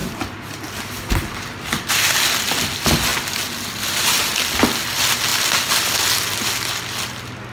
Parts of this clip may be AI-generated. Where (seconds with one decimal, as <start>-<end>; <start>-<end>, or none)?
none